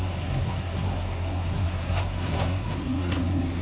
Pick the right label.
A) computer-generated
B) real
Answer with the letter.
A